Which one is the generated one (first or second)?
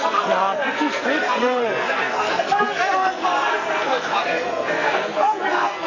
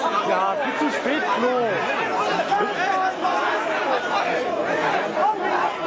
first